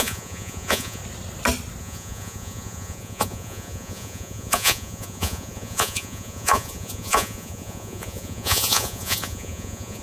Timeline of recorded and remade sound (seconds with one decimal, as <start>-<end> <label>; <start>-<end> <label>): 0.0-1.0 remade; 1.0-1.8 recorded; 1.8-10.0 remade